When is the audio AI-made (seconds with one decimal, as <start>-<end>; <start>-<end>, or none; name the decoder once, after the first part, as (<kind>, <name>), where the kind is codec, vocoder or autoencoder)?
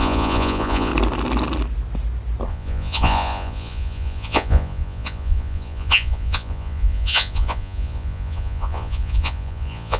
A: 0.0-0.9 (vocoder, Vocos); 2.5-10.0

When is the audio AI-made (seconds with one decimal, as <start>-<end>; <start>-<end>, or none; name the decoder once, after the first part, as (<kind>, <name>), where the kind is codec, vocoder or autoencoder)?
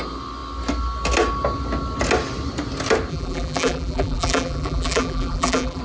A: 3.1-5.8 (vocoder, BigVGAN v2)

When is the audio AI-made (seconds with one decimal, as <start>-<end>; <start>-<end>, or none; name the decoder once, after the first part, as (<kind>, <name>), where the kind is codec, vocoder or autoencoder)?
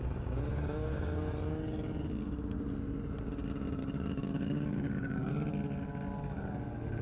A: 0.5-1.3 (codec, DAC); 3.8-5.3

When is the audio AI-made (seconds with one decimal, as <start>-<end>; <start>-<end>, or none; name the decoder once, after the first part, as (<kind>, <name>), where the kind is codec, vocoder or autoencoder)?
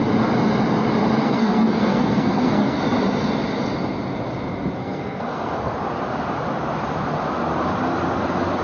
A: 1.2-2.8 (codec, SNAC); 4.8-5.7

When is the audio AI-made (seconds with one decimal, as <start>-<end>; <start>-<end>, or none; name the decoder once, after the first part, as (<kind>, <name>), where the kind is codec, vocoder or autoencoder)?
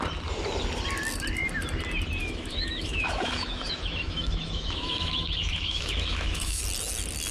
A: 2.2-6.6 (autoencoder, DAC-VAE)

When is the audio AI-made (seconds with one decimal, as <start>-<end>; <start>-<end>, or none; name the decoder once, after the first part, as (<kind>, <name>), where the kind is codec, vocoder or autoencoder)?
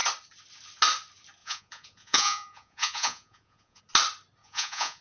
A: 1.4-3.8 (vocoder, Vocos); 4.4-5.0